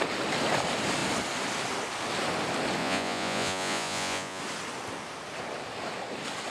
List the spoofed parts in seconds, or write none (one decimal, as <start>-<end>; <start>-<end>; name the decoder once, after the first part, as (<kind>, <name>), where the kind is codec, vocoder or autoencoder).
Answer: 2.8-4.4 (vocoder, Vocos)